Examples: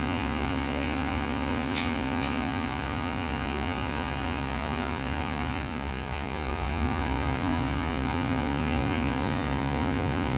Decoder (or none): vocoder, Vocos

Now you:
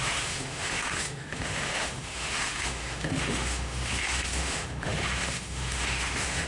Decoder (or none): autoencoder, DAC-VAE